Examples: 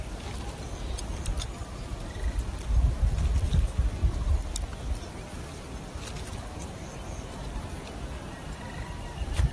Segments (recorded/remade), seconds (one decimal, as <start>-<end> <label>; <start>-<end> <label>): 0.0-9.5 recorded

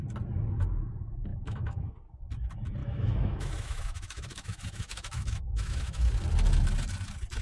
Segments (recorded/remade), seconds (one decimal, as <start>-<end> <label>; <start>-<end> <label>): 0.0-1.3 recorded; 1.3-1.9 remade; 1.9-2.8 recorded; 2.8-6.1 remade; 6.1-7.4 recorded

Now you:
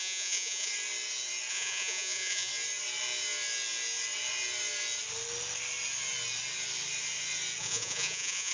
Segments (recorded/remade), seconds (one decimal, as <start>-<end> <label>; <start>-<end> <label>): 0.0-0.7 remade; 0.7-1.5 recorded; 1.5-2.5 remade; 2.5-7.6 recorded; 7.6-8.5 remade

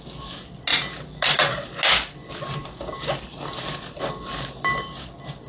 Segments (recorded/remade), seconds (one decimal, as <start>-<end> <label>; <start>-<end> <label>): 0.0-5.5 recorded

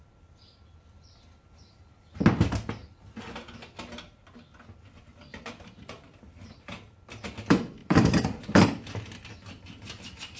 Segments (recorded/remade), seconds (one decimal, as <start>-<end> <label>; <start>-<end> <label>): 0.0-5.3 recorded; 5.3-7.0 remade; 7.0-7.8 recorded; 7.8-8.6 remade; 8.6-10.4 recorded

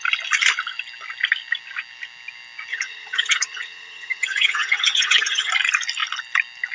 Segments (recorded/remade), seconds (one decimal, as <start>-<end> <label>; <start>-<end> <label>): 0.0-2.7 recorded; 2.7-5.5 remade; 5.5-6.7 recorded

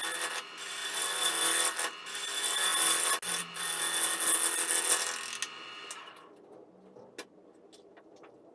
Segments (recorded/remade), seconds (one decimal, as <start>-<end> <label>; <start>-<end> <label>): 0.0-8.5 recorded

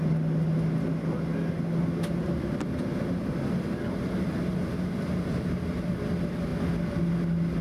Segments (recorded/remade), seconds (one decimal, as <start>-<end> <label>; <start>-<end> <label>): 0.0-7.6 recorded